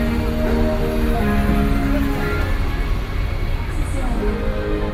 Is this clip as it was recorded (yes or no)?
yes